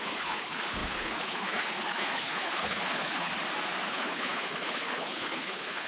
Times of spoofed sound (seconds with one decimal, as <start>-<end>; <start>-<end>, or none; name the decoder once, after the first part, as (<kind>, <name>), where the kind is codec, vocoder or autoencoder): 0.0-3.3 (codec, HILCodec); 3.9-5.9